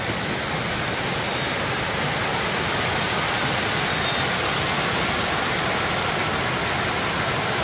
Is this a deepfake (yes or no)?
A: no